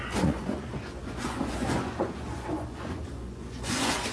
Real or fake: fake